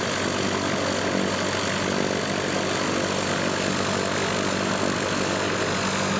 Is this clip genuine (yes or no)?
yes